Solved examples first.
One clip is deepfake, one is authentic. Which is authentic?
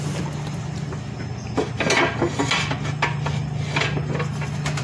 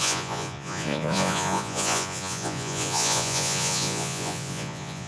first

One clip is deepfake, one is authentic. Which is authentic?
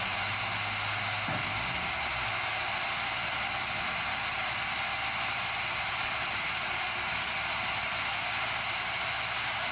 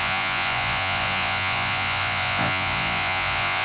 first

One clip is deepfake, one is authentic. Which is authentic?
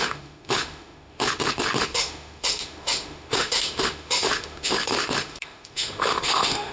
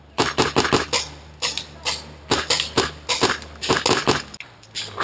second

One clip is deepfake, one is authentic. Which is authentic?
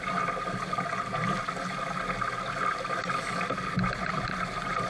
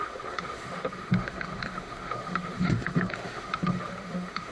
first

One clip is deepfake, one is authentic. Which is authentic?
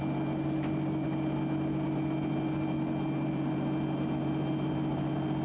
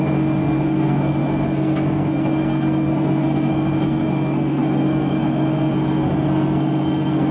first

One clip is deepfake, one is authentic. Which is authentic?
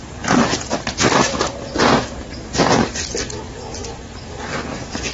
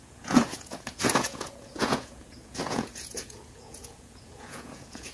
first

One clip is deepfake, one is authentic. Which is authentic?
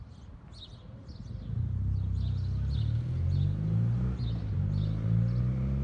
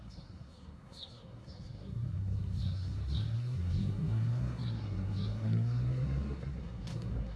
first